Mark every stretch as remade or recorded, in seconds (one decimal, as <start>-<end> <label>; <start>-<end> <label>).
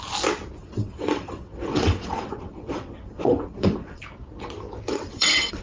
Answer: 0.0-0.6 recorded; 0.6-4.0 remade; 4.0-4.9 recorded; 4.9-5.6 remade